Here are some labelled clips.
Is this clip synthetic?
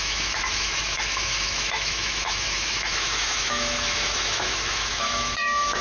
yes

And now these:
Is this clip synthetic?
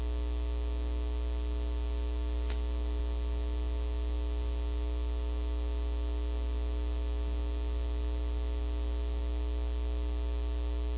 no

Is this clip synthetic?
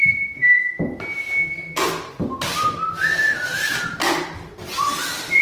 no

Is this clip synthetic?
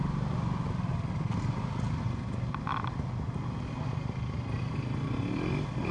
no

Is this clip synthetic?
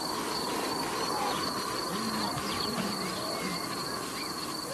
no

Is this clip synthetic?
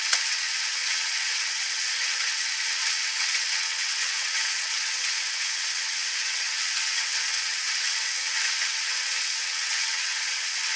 yes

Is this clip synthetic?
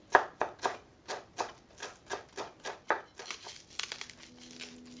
no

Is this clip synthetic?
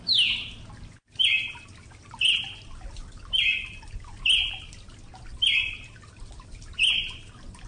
no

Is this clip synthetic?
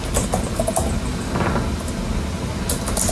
no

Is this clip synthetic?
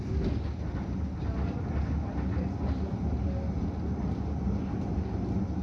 no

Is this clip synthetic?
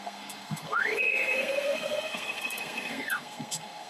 yes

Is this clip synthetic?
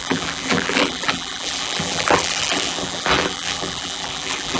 yes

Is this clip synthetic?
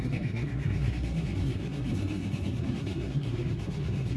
yes